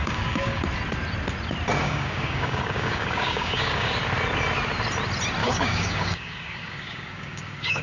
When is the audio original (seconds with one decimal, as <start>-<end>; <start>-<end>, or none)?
0.6-1.8; 3.9-5.4